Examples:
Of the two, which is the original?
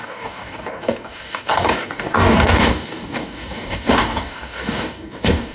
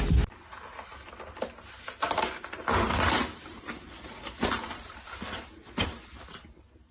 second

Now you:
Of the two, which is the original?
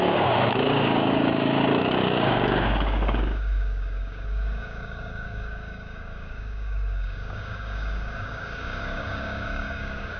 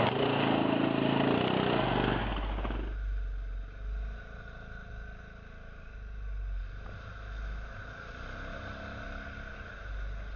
second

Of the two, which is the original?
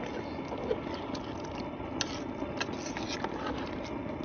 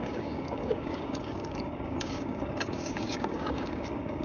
first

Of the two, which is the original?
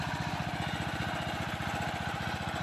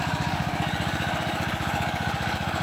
first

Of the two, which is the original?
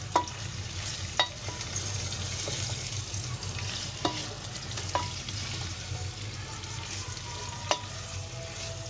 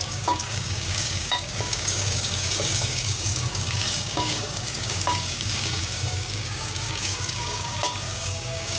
first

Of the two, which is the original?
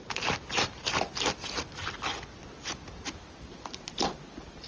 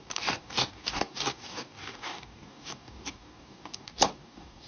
first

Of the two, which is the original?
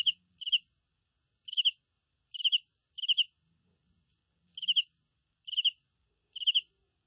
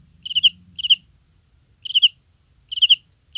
second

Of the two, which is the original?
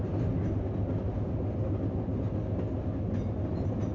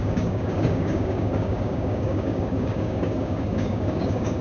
first